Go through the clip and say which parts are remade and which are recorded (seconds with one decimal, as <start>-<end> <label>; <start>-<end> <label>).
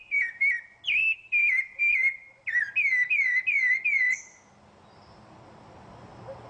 0.0-0.6 remade; 0.6-1.0 recorded; 1.0-1.8 remade; 1.8-6.5 recorded